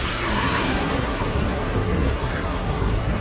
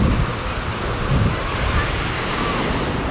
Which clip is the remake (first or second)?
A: first